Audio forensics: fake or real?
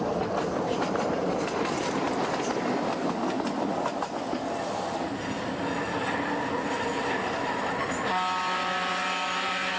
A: real